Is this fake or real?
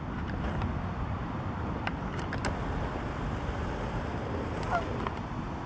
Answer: real